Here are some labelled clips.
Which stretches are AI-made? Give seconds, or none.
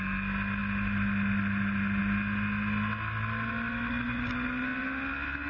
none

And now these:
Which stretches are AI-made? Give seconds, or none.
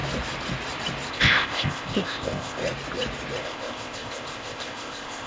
1.1-2.6 (codec, ZipCodec); 3.4-5.3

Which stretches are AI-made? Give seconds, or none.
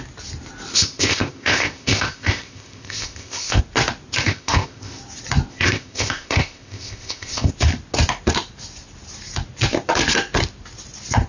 0.7-3.6 (codec, ZipCodec); 4.2-5.0; 5.5-7.5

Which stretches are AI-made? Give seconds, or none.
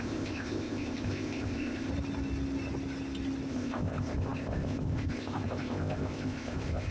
0.0-1.9 (codec, ZipCodec); 3.5-6.9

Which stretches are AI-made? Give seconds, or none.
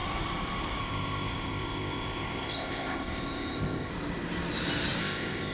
0.8-3.9 (codec, ZipCodec); 5.0-5.5